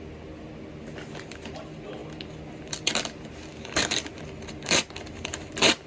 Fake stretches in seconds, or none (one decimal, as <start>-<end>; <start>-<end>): 3.5-4.1